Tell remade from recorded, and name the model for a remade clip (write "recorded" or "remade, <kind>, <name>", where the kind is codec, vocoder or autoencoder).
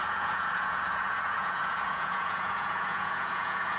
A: remade, vocoder, Vocos